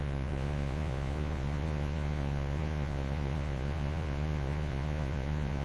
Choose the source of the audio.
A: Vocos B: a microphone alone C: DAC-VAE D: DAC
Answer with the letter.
A